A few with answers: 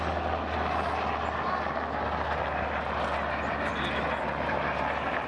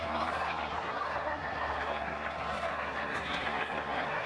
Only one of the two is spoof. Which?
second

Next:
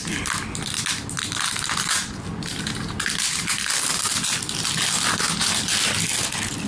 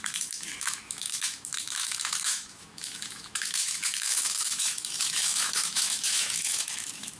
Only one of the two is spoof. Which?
second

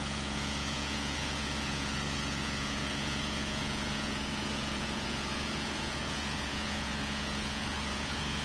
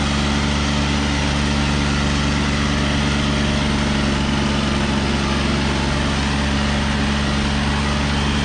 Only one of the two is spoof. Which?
first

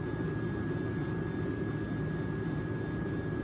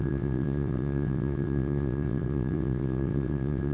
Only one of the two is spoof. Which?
second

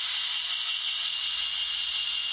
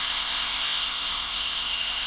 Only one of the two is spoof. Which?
second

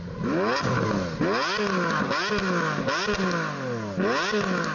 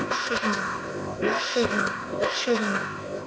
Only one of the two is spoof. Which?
second